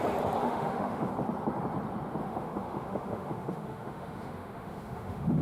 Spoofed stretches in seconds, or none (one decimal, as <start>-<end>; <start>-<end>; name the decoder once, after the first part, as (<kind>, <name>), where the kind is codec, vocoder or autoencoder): 0.4-1.1 (autoencoder, DAC-VAE); 2.2-5.4